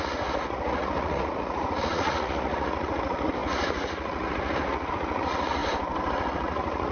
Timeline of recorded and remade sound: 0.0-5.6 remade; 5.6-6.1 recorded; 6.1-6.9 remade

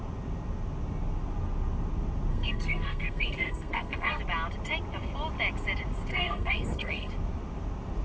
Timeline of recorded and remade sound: 0.0-2.3 recorded; 2.3-4.2 remade; 4.2-6.1 recorded; 6.1-7.1 remade; 7.1-8.0 recorded

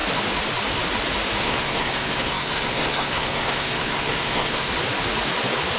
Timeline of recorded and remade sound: 0.0-1.4 recorded; 1.4-4.7 remade; 4.7-5.8 recorded